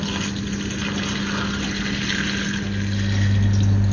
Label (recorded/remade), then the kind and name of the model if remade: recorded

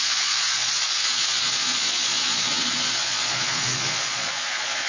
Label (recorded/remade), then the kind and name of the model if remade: remade, vocoder, Vocos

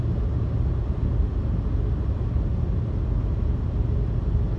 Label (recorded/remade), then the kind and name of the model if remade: recorded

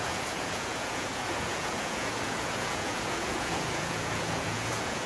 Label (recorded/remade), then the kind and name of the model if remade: remade, vocoder, Vocos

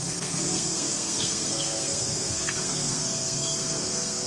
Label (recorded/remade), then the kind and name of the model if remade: remade, codec, SNAC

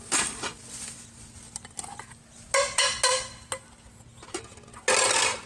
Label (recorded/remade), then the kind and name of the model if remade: recorded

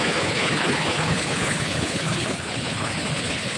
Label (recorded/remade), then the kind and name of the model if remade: remade, codec, HILCodec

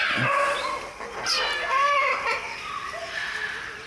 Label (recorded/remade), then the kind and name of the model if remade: recorded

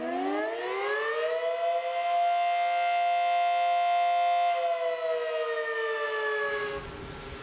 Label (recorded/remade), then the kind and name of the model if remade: recorded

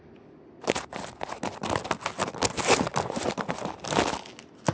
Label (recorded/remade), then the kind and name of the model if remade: recorded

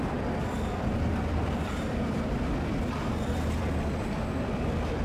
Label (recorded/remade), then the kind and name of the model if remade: remade, vocoder, BigVGAN v2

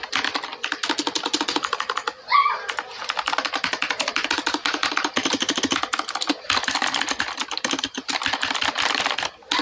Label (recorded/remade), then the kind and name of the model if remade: recorded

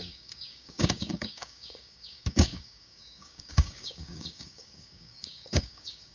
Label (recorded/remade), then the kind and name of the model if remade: remade, codec, DAC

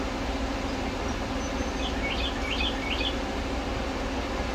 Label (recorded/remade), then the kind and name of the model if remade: recorded